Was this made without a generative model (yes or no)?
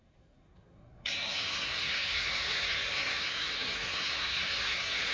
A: no